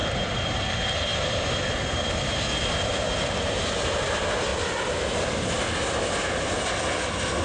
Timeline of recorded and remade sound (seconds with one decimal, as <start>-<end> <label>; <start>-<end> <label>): 0.0-7.4 recorded